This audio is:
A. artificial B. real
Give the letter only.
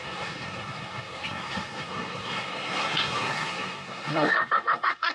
A